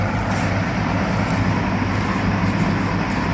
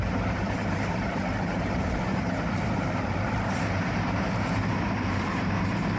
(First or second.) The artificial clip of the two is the second